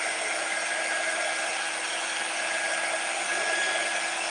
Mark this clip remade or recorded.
recorded